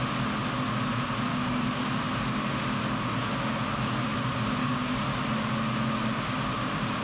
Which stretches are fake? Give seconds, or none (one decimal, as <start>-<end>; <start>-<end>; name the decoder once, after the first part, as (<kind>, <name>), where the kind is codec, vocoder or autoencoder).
1.3-2.0 (codec, DAC); 4.6-5.1